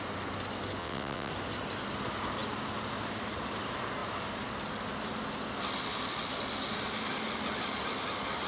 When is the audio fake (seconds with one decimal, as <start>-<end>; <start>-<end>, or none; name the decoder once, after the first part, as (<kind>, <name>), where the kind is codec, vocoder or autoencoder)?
0.8-1.3 (vocoder, WaveNeXt)